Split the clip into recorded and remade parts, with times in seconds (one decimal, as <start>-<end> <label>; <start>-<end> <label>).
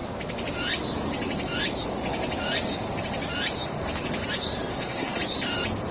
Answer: 0.0-4.7 recorded; 4.7-5.2 remade; 5.2-5.9 recorded